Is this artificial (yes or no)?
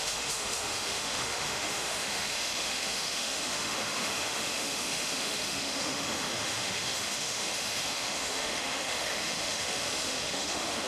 yes